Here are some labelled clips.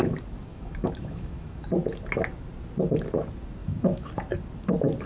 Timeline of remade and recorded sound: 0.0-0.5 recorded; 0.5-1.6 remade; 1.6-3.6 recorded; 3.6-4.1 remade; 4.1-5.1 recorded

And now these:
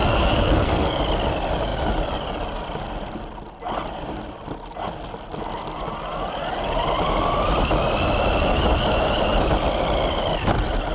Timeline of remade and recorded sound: 0.0-1.0 remade; 1.0-10.9 recorded

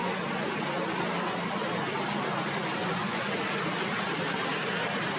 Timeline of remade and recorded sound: 0.0-2.8 recorded; 2.8-3.3 remade; 3.3-5.2 recorded